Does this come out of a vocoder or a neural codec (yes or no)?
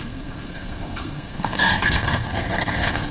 yes